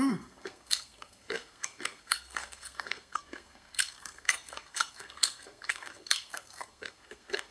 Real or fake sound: fake